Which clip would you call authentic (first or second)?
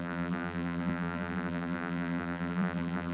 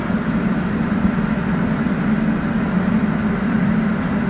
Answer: second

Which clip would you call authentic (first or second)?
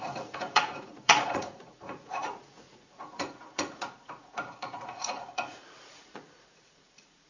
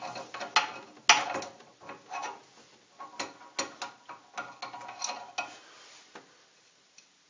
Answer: second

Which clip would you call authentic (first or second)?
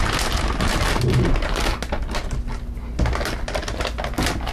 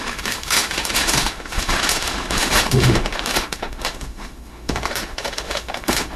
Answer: first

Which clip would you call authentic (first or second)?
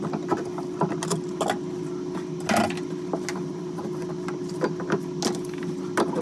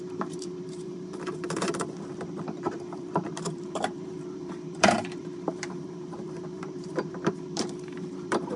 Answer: first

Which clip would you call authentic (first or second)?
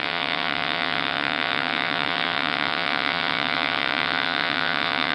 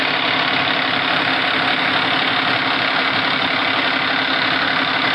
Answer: second